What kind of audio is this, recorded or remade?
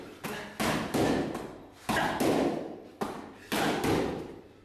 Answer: recorded